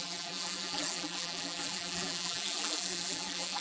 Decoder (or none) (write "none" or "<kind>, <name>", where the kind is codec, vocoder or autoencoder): vocoder, BigVGAN v2